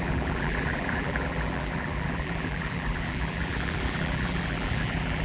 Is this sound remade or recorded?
remade